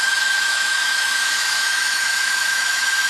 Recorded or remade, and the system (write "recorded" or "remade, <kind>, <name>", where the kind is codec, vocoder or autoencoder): remade, autoencoder, DAC-VAE